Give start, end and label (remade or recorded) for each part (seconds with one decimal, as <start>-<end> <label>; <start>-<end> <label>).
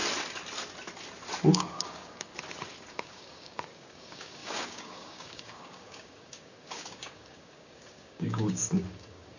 0.0-1.5 recorded; 1.5-2.3 remade; 2.3-2.9 recorded; 2.9-9.4 remade